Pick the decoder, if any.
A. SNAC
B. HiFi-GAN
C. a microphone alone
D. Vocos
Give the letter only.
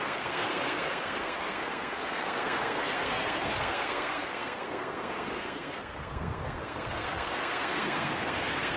A